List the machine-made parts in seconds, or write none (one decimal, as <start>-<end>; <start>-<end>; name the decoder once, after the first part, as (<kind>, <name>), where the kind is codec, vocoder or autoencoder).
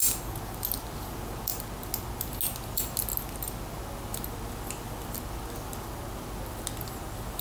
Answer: none